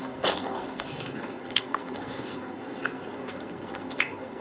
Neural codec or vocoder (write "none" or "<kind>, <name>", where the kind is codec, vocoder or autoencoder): codec, SNAC